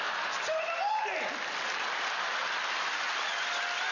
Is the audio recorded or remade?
recorded